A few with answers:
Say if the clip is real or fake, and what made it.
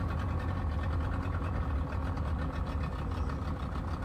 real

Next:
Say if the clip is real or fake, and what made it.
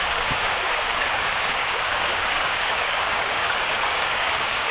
fake, codec, DAC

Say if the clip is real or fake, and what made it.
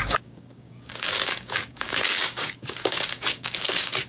fake, codec, DAC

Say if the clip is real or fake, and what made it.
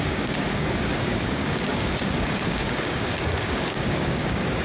fake, codec, DAC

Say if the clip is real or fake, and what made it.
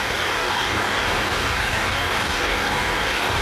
fake, codec, DAC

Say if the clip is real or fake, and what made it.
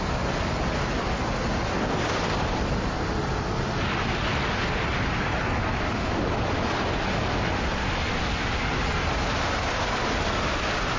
real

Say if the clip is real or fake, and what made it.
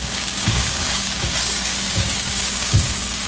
fake, codec, DAC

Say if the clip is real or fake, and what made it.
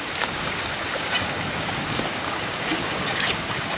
fake, codec, DAC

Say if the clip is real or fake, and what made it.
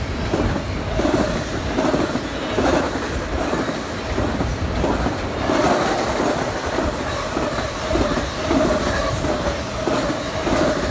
real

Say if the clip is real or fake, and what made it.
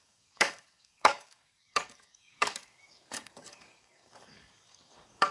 fake, codec, DAC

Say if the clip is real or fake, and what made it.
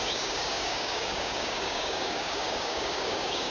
fake, codec, DAC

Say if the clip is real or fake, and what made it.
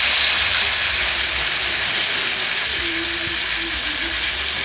real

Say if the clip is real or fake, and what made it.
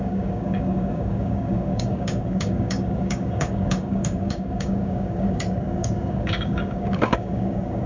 fake, codec, DAC